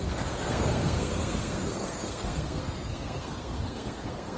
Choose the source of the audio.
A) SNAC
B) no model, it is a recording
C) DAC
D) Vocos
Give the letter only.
A